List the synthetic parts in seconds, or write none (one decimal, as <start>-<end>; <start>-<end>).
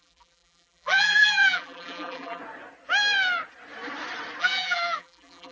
0.0-2.4; 4.4-5.5